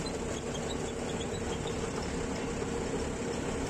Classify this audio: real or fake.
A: real